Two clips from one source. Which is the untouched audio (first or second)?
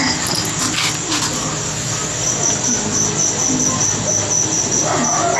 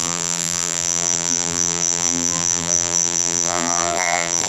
first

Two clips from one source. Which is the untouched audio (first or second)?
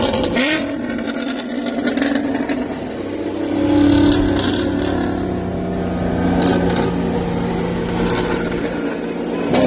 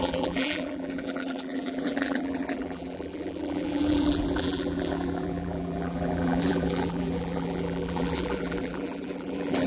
first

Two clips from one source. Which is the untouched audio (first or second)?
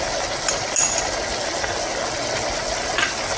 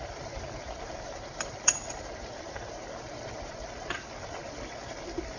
first